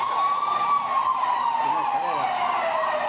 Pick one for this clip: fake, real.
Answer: real